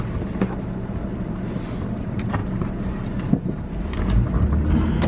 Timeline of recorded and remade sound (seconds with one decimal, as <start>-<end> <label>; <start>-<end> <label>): 0.0-5.1 recorded